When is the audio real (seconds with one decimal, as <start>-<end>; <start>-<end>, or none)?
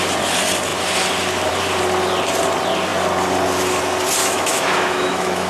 0.0-4.2